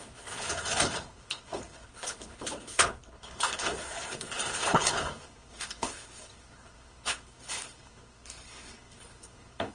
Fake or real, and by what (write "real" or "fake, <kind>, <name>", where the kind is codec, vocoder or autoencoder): fake, codec, HILCodec